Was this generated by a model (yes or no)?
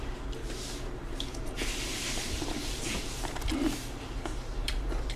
yes